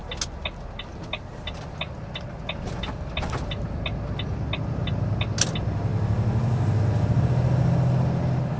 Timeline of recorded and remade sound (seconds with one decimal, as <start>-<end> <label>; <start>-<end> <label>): 0.0-8.6 recorded